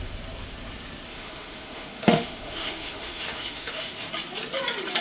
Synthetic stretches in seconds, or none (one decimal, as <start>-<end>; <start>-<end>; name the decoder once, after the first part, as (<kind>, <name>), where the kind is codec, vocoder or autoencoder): 1.1-4.1 (autoencoder, DAC-VAE)